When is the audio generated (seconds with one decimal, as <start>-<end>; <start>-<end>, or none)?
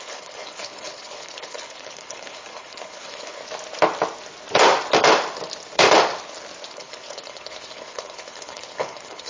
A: 0.0-3.4; 6.7-9.3